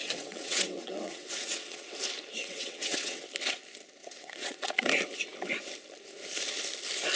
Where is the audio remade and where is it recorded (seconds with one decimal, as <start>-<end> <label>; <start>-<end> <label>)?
0.0-1.9 remade; 1.9-2.4 recorded; 2.4-3.2 remade; 3.2-4.0 recorded; 4.0-4.7 remade; 4.7-7.2 recorded